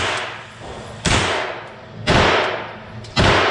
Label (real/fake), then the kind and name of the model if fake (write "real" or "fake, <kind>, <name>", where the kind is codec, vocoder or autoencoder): real